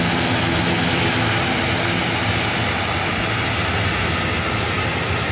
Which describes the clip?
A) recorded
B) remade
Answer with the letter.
A